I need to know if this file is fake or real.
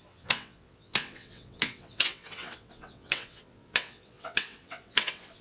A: fake